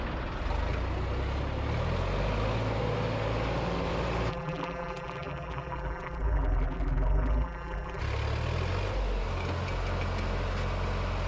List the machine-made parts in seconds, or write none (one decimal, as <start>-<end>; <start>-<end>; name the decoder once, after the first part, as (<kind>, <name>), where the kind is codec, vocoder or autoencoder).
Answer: 4.3-8.0 (vocoder, BigVGAN v2)